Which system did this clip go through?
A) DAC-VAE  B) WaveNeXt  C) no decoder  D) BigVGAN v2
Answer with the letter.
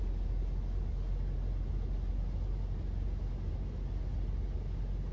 C